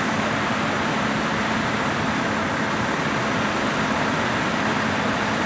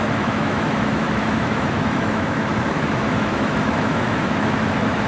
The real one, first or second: first